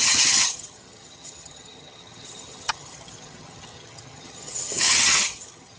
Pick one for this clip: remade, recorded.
remade